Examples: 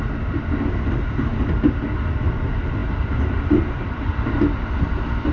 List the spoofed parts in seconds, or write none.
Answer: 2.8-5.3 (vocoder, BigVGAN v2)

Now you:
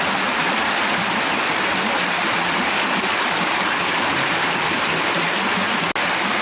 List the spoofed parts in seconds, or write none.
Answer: none

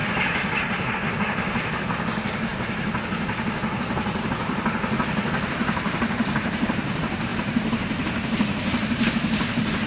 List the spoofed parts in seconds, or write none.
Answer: 0.0-2.5 (vocoder, BigVGAN v2); 3.7-9.9

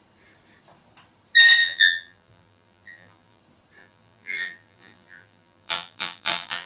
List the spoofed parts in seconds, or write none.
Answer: 1.6-3.4 (vocoder, BigVGAN v2); 3.8-6.7

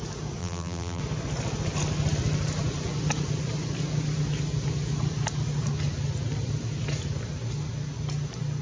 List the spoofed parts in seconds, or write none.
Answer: 0.4-1.0 (vocoder, BigVGAN v2)